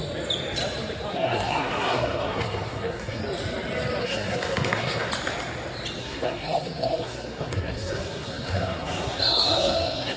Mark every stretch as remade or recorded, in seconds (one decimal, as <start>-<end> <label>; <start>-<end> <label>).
0.0-1.1 recorded; 1.1-3.2 remade; 3.2-4.0 recorded; 4.0-5.1 remade; 5.1-6.0 recorded; 6.0-10.2 remade